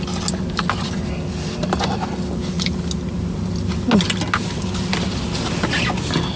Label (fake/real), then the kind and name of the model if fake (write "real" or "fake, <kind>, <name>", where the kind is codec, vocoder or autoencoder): real